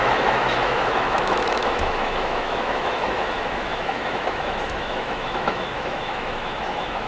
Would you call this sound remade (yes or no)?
yes